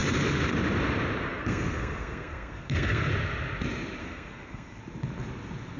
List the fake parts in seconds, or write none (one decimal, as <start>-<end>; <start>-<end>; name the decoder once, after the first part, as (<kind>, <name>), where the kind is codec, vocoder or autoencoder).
1.3-3.1 (codec, SNAC); 4.0-4.8

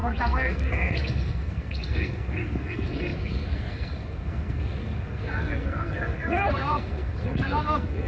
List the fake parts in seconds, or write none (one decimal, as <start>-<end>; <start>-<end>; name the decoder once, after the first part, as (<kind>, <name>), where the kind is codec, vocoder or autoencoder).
0.0-8.1 (codec, SNAC)

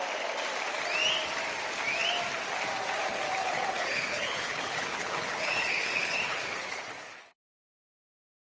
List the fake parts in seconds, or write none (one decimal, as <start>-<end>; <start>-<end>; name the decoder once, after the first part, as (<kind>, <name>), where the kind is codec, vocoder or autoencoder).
3.4-8.6 (codec, HILCodec)